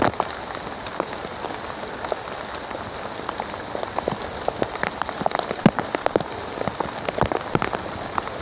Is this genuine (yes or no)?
yes